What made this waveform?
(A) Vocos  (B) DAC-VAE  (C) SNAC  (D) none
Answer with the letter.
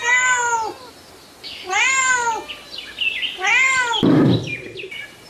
D